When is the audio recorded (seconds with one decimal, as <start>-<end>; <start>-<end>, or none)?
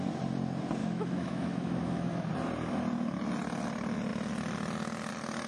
0.0-0.8; 2.3-5.5